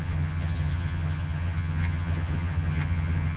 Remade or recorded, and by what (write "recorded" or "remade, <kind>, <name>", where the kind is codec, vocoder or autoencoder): remade, vocoder, HiFi-GAN